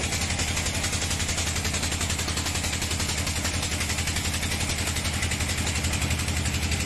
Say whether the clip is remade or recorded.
recorded